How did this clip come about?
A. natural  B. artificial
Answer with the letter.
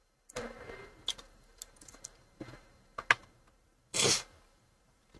A